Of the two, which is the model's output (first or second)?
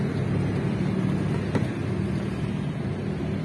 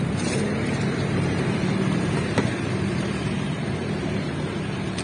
second